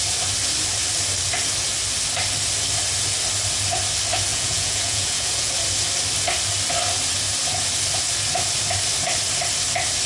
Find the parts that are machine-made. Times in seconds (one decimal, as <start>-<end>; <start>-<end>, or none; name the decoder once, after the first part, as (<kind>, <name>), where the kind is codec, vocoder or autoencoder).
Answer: 4.3-5.5 (vocoder, Vocos)